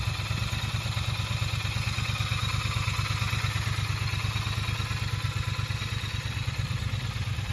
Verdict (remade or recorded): recorded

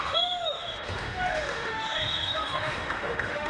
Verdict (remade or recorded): remade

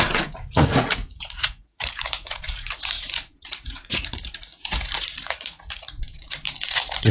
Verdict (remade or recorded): remade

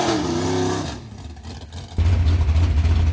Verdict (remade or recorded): recorded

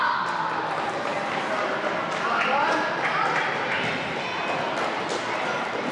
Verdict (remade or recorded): recorded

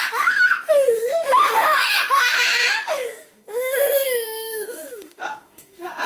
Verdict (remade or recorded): remade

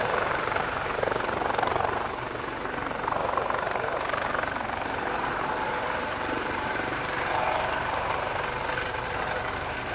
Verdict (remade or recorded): remade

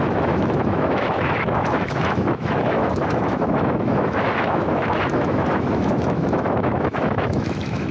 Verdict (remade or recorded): remade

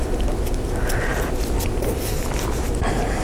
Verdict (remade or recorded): remade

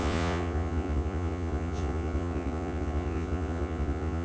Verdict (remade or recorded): remade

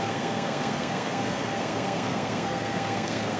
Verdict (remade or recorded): remade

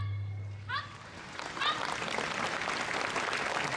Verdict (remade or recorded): recorded